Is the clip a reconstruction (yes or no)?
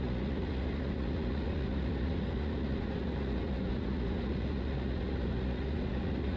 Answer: yes